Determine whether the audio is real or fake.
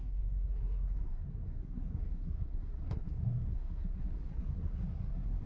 fake